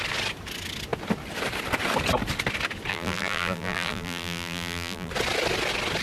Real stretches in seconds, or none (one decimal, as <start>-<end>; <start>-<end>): 0.0-2.9; 5.1-6.0